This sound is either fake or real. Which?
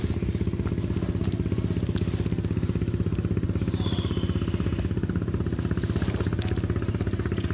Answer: real